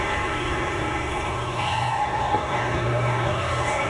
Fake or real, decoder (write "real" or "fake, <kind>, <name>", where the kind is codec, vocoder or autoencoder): fake, codec, SNAC